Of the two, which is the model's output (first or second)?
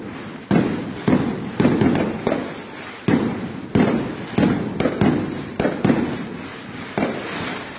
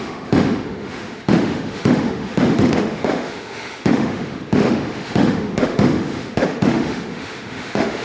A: second